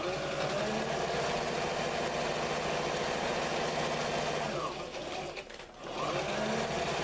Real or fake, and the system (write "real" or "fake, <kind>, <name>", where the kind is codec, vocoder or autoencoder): real